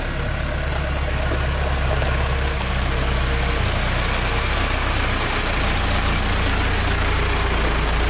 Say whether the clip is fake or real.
real